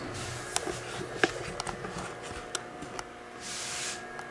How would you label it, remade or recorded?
recorded